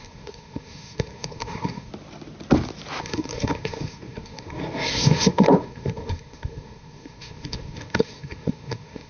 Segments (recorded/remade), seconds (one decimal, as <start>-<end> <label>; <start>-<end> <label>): 0.0-1.9 remade; 1.9-3.0 recorded; 3.0-9.1 remade